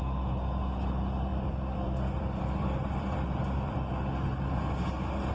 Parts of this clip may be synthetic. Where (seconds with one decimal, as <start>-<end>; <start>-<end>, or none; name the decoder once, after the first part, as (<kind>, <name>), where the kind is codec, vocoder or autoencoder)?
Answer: 1.3-3.9 (vocoder, BigVGAN v2)